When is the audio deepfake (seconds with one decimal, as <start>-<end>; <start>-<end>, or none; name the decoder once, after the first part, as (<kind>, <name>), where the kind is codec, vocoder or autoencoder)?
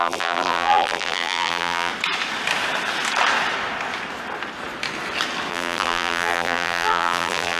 0.0-1.9 (vocoder, BigVGAN v2); 5.5-7.6